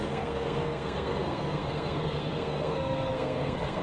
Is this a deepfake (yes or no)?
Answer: yes